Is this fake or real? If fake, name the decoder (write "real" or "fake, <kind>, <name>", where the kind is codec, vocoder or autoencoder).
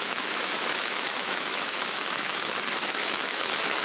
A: fake, autoencoder, DAC-VAE